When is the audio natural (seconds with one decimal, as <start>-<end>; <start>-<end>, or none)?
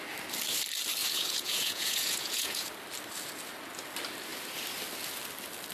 0.0-1.0; 2.7-5.7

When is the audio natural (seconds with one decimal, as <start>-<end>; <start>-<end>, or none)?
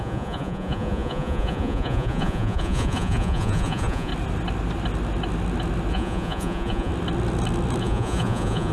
4.1-5.9; 6.9-7.8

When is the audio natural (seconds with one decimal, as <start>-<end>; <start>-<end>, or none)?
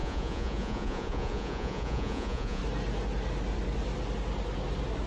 2.6-5.1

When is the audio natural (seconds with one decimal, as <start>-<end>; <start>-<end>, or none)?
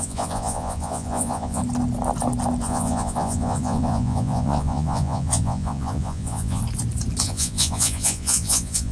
1.6-2.6; 6.6-7.2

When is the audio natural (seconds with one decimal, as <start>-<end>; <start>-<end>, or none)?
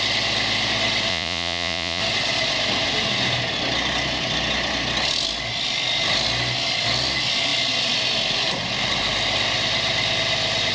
0.0-1.1; 2.0-10.7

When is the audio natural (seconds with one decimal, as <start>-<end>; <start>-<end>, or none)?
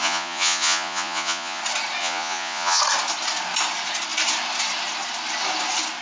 1.6-2.0; 2.8-6.0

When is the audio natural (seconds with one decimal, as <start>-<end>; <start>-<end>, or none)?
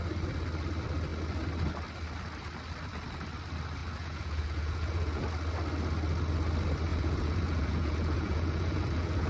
0.0-3.8; 5.2-6.9